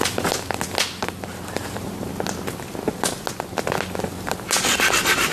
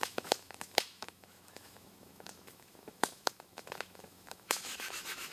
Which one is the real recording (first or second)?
first